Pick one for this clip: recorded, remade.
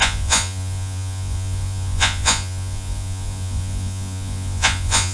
remade